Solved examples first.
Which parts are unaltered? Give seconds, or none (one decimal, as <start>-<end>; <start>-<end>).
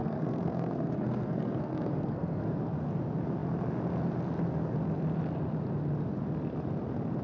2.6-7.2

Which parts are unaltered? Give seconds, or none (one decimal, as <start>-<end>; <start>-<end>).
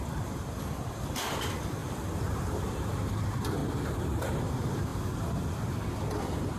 3.6-4.4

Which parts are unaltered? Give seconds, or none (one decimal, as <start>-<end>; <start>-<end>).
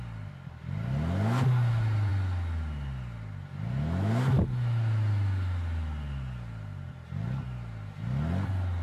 0.0-8.8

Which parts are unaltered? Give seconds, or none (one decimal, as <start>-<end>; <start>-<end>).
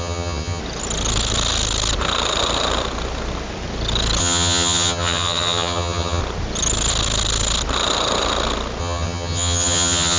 0.6-4.2; 6.2-8.8